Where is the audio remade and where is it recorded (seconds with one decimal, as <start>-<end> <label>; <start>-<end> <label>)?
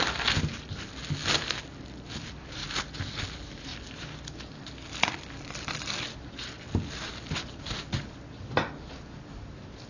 0.0-9.9 recorded